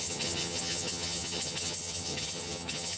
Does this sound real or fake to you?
fake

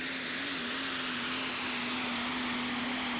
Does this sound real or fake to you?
real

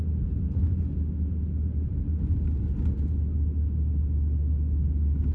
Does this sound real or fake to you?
real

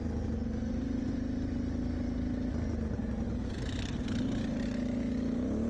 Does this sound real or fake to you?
real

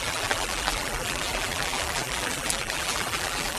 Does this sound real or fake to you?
fake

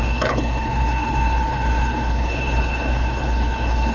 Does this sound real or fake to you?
fake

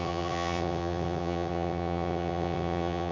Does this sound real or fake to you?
fake